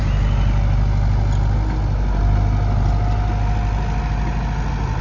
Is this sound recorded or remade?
recorded